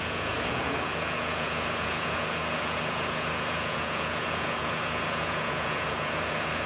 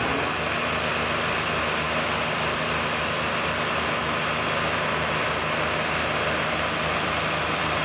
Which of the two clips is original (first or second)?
second